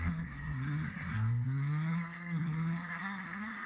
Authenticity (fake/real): fake